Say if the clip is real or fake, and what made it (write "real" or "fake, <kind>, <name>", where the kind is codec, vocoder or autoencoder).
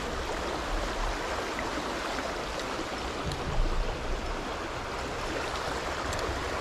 real